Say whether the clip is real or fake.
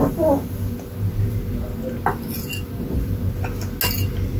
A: real